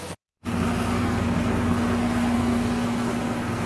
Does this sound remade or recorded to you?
remade